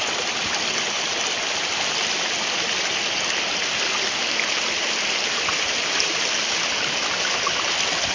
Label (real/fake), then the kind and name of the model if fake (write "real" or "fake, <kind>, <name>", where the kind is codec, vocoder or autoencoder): real